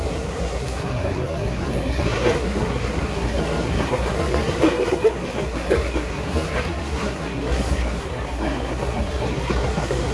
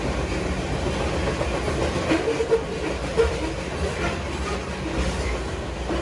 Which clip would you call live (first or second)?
second